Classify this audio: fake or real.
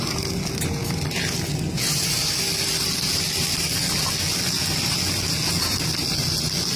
real